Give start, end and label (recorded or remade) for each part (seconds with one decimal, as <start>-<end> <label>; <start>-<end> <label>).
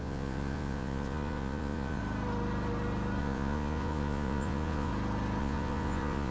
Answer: 0.0-2.0 remade; 2.0-3.2 recorded; 3.2-4.9 remade; 4.9-5.4 recorded; 5.4-6.3 remade